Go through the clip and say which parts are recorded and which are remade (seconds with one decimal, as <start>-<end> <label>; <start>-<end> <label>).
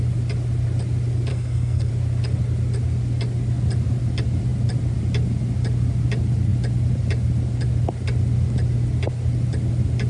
0.0-1.3 recorded; 1.3-1.9 remade; 1.9-10.1 recorded